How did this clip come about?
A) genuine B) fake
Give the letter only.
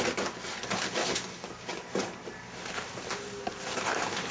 A